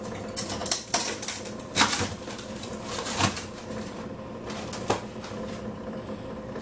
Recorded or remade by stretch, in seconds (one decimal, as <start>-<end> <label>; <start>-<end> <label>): 0.0-0.6 recorded; 0.6-4.0 remade; 4.0-6.6 recorded